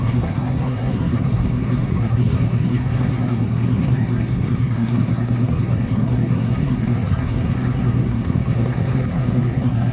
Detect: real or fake fake